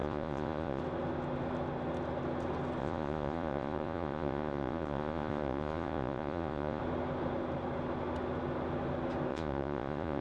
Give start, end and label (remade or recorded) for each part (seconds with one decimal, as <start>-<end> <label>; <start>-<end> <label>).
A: 0.0-0.8 remade; 0.8-2.8 recorded; 2.8-6.8 remade; 6.8-9.3 recorded; 9.3-10.2 remade